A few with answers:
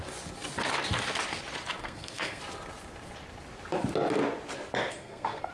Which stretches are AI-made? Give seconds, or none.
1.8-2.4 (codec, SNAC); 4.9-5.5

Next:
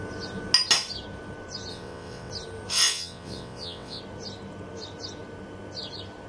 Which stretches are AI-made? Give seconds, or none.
1.7-2.3 (vocoder, WaveNeXt); 2.7-4.0

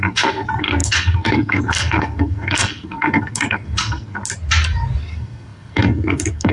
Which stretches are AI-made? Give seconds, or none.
0.0-4.2 (codec, SNAC); 5.0-6.5

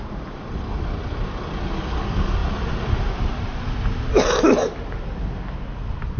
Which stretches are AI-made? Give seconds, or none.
2.4-4.1 (vocoder, BigVGAN v2)

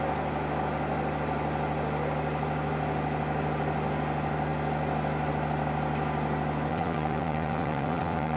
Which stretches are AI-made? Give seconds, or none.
6.7-8.4 (vocoder, WaveNeXt)

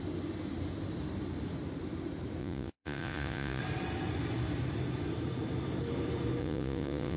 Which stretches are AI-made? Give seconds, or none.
2.4-3.6 (vocoder, Vocos); 6.4-7.2